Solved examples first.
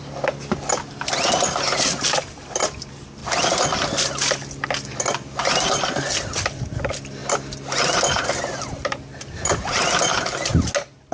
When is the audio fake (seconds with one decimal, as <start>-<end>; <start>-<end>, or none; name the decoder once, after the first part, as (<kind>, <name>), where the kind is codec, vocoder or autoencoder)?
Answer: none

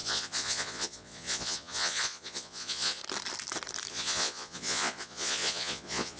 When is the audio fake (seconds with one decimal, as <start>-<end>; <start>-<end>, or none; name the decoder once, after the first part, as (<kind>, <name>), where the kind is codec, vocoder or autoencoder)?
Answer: 0.0-3.0 (vocoder, Vocos); 3.9-6.2

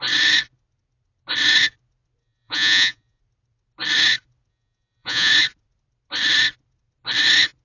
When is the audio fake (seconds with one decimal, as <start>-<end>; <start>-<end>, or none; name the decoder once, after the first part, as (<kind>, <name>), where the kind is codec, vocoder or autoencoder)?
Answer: 2.2-3.2 (vocoder, Vocos); 4.5-5.3

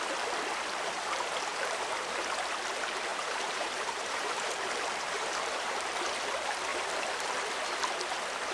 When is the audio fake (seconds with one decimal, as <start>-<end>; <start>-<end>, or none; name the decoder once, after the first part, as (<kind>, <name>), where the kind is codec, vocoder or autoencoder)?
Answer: 1.5-2.2 (vocoder, BigVGAN v2); 3.1-6.0; 6.7-7.3

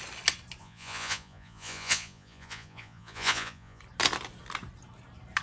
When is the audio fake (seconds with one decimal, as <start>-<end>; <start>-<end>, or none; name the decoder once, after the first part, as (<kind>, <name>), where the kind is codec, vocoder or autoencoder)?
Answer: 0.6-3.8 (vocoder, Vocos)

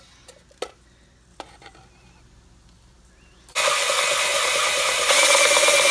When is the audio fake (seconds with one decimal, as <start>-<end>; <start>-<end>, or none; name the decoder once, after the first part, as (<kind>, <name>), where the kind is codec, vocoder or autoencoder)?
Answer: 4.3-5.4 (vocoder, BigVGAN v2)